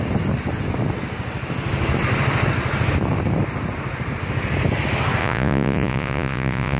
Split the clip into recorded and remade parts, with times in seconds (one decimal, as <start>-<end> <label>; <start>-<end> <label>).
0.0-5.2 recorded; 5.2-6.8 remade